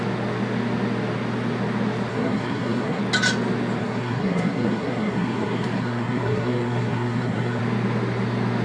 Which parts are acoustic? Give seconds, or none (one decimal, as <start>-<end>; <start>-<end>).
0.0-2.1; 3.0-3.8; 7.6-8.6